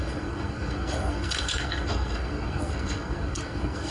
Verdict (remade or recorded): remade